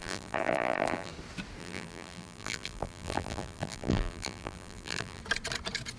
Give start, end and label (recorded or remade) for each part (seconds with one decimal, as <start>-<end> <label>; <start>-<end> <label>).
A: 0.0-1.1 remade; 1.1-1.6 recorded; 1.6-5.2 remade; 5.2-6.0 recorded